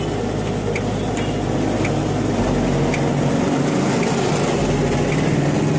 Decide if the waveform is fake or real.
real